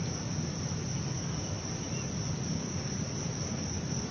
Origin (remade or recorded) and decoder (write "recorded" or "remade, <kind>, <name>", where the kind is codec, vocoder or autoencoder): recorded